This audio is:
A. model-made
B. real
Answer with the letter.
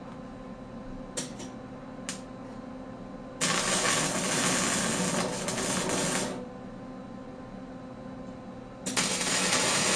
B